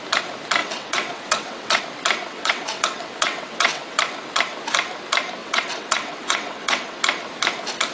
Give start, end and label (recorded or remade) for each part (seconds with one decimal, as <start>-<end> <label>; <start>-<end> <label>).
0.0-0.6 recorded; 0.6-1.8 remade; 1.8-2.3 recorded; 2.3-4.0 remade; 4.0-5.4 recorded; 5.4-7.0 remade; 7.0-7.9 recorded